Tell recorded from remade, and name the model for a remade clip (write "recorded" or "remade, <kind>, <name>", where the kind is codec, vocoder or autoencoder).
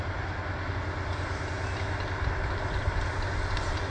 recorded